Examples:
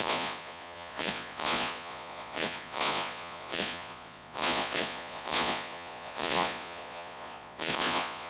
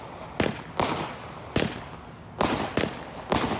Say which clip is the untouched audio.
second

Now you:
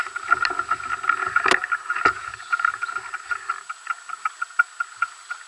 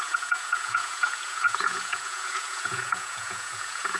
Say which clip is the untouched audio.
first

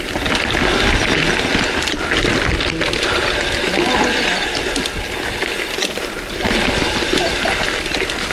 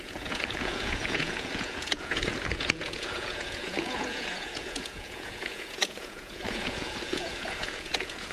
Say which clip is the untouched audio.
first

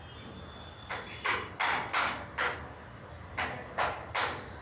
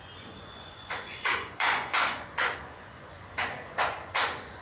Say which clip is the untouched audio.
first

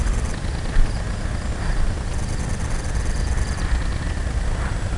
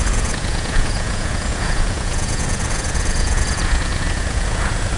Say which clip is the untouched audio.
first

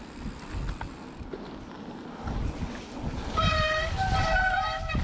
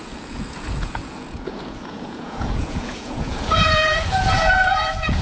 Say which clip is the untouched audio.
first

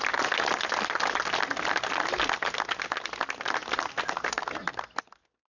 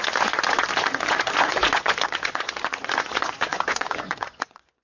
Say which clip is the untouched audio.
first